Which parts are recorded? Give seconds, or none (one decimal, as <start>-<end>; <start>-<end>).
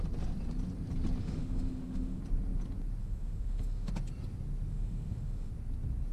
0.0-1.2; 2.2-3.0; 3.9-4.7; 5.5-6.1